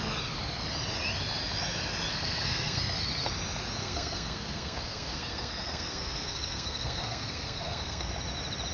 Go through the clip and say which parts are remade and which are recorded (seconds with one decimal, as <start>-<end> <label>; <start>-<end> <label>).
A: 0.0-2.1 recorded; 2.1-2.8 remade; 2.8-3.8 recorded; 3.8-8.1 remade; 8.1-8.7 recorded